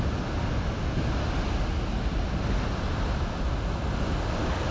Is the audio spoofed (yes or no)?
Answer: no